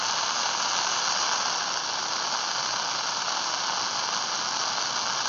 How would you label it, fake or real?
real